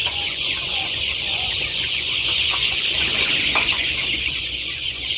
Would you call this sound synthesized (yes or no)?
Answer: yes